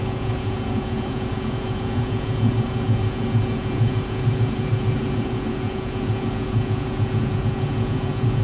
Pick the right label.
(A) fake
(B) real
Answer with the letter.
A